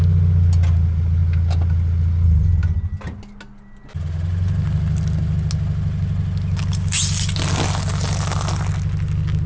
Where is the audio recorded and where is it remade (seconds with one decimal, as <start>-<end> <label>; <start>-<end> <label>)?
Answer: 0.0-9.5 recorded